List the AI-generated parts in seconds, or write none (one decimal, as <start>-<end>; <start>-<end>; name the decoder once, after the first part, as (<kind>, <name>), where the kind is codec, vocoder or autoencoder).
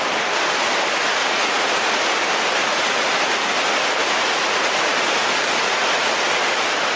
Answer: 1.2-1.9 (vocoder, Vocos); 2.6-3.4; 4.0-4.6; 5.2-6.1